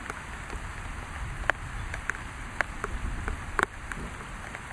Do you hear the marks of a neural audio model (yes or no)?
no